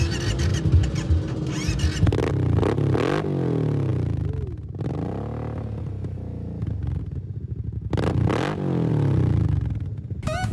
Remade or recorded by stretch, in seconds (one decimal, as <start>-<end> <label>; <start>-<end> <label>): 0.0-10.5 recorded